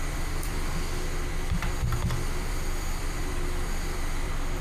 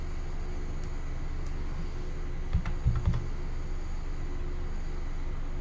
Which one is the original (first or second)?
second